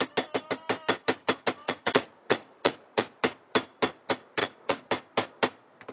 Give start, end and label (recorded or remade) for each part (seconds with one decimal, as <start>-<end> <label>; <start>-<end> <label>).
0.0-1.6 recorded; 1.6-3.2 remade; 3.2-4.4 recorded; 4.4-4.9 remade; 4.9-5.9 recorded